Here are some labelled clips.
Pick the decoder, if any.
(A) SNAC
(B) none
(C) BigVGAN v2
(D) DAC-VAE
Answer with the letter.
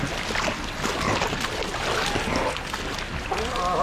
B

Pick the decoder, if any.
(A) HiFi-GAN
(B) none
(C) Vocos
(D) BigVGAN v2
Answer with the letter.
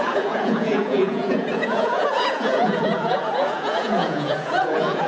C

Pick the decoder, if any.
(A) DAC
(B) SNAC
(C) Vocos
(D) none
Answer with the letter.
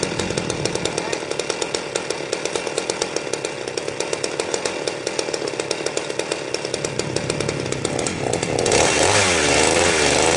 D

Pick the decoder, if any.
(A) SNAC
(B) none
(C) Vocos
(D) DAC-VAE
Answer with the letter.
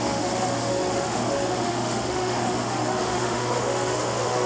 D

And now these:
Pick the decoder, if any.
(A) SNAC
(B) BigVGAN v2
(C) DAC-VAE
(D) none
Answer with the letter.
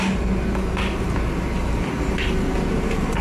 D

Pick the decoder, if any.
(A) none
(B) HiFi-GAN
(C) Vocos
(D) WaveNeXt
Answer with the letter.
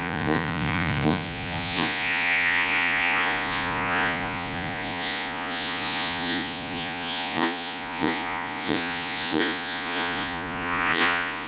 C